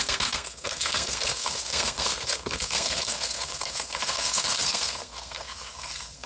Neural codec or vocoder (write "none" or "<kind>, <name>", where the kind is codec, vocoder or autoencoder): codec, SNAC